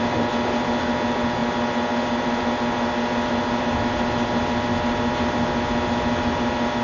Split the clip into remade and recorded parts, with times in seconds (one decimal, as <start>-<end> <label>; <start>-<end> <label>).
0.0-6.8 recorded